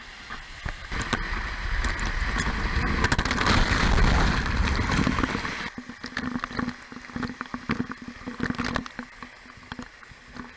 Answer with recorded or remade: recorded